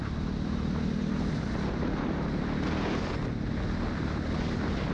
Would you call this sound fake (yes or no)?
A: no